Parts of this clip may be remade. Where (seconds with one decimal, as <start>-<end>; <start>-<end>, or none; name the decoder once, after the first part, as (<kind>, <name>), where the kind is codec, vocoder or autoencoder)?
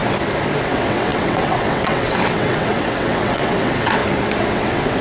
0.6-4.0 (vocoder, WaveNeXt); 4.5-5.0